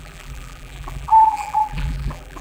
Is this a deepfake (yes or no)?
yes